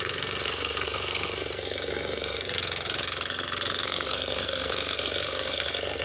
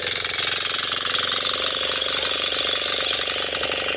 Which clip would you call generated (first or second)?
first